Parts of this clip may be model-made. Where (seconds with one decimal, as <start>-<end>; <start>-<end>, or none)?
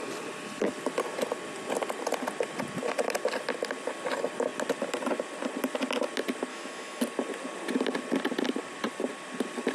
6.5-7.0